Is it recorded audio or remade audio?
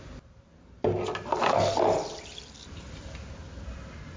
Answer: recorded